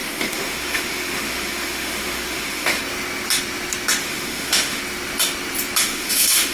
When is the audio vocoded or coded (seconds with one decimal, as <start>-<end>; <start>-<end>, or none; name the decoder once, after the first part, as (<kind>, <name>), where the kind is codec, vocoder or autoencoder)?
0.0-2.8 (autoencoder, DAC-VAE); 4.0-4.8; 5.8-6.5